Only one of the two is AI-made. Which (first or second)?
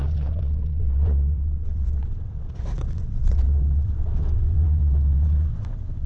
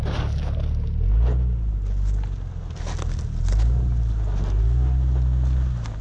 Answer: first